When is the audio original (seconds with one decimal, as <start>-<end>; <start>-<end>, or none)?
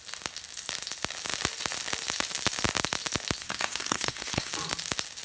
0.0-3.4; 4.5-5.2